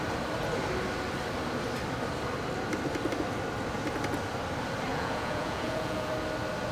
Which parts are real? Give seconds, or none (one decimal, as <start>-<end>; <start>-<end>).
0.0-4.9; 6.1-6.7